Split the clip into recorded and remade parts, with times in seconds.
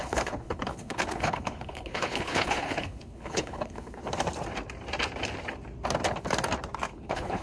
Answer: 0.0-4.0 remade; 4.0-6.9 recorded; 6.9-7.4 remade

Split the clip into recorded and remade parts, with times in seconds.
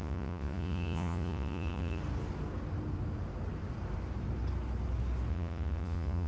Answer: 0.0-2.0 remade; 2.0-5.3 recorded; 5.3-6.3 remade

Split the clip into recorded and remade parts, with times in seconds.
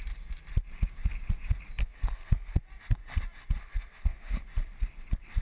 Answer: 0.0-1.8 recorded; 1.8-2.6 remade; 2.6-3.6 recorded; 3.6-4.4 remade; 4.4-5.4 recorded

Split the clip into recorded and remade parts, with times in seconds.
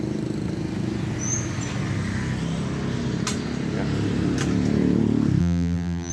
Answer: 0.0-5.4 recorded; 5.4-6.1 remade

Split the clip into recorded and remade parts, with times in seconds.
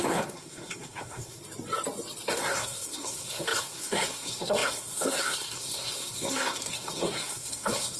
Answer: 0.0-1.4 remade; 1.4-2.3 recorded; 2.3-8.0 remade